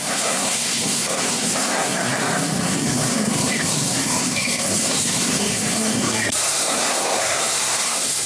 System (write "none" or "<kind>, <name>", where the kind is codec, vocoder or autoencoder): codec, SNAC